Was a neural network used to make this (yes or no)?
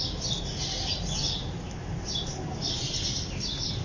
no